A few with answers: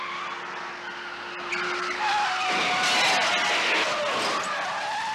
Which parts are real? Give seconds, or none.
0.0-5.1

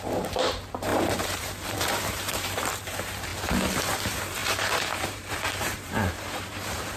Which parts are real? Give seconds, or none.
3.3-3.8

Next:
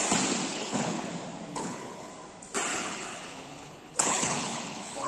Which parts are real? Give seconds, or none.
0.0-0.5; 1.1-1.5; 2.1-2.7

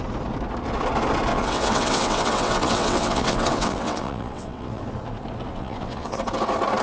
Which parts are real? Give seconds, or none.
0.0-1.3; 4.8-5.5; 6.2-6.8

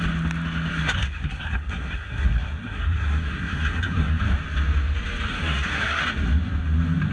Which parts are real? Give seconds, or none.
0.0-0.7; 4.2-5.3; 6.0-7.1